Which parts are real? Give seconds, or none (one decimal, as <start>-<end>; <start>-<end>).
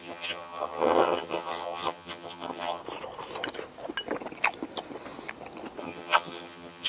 2.8-5.8